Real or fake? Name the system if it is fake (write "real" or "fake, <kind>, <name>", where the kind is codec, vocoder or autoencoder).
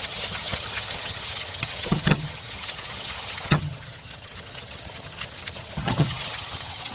fake, vocoder, HiFi-GAN